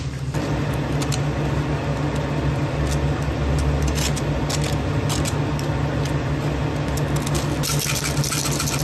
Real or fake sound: real